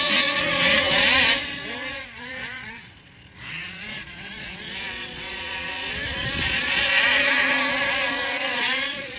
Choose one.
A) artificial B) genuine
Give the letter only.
A